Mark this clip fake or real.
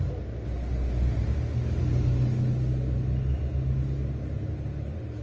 real